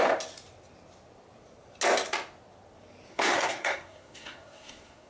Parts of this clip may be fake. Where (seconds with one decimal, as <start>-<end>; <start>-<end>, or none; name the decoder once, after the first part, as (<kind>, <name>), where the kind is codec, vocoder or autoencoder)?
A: 3.1-5.1 (codec, SNAC)